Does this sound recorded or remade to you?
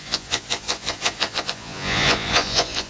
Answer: remade